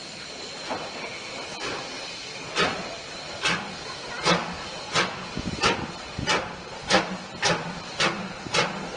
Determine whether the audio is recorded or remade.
recorded